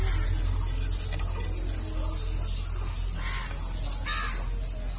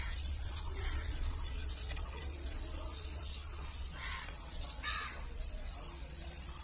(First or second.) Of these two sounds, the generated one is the second